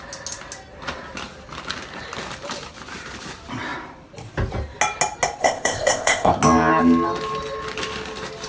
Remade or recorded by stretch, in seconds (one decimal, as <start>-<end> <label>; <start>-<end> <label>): 0.0-5.4 recorded; 5.4-6.3 remade; 6.3-8.5 recorded